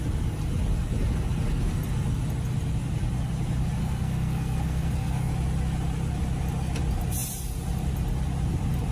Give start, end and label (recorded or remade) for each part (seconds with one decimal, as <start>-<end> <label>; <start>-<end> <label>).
0.0-3.8 recorded; 3.8-5.3 remade; 5.3-8.9 recorded